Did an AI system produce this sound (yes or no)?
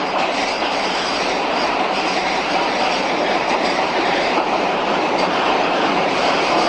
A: yes